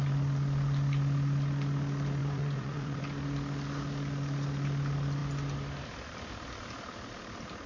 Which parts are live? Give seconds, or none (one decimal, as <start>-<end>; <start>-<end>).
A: 0.0-2.2; 3.0-7.7